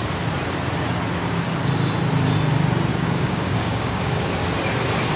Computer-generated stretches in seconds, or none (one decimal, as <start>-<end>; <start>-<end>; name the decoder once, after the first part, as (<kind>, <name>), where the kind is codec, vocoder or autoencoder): 2.9-4.2 (codec, DAC)

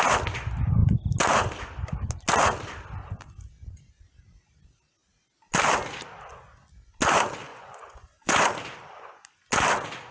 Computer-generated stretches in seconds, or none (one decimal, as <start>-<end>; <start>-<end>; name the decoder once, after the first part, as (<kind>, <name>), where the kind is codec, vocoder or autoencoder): 7.5-8.4 (vocoder, Vocos)

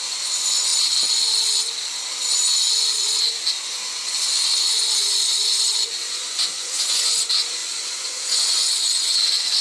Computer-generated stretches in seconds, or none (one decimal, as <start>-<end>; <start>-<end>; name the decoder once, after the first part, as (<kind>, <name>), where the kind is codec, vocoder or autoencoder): 0.0-0.7 (vocoder, Vocos); 3.2-4.3; 5.0-9.6

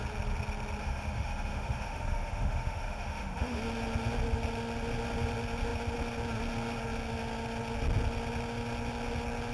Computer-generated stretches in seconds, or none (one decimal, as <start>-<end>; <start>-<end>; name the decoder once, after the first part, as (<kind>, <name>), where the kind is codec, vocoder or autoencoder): 0.8-3.6 (autoencoder, DAC-VAE)

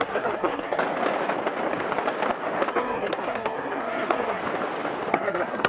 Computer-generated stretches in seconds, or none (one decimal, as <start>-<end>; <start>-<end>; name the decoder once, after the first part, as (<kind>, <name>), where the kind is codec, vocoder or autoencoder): 0.0-0.8 (codec, SNAC); 2.7-4.4; 5.1-5.7

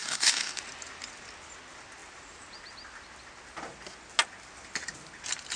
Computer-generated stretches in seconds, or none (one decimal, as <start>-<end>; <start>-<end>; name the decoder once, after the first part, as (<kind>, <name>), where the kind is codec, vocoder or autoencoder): 0.0-0.6 (codec, DAC)